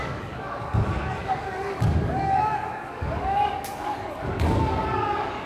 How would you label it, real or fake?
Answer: fake